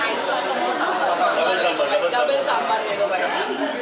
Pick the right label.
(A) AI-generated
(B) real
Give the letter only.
B